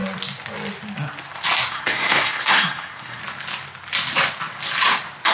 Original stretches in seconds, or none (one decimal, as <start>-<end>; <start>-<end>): 0.0-1.7; 3.2-5.3